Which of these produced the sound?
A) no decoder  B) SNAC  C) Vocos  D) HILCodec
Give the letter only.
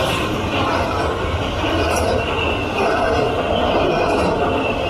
A